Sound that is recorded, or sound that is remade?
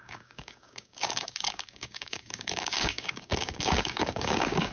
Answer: remade